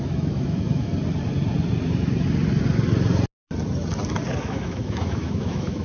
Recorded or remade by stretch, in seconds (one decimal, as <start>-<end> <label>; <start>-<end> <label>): 0.0-0.9 remade; 0.9-4.4 recorded; 4.4-5.8 remade